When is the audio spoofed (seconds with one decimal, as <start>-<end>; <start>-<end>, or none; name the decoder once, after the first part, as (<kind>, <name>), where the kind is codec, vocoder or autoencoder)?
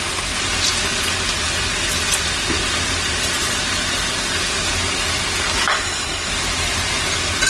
5.7-6.3 (codec, SNAC)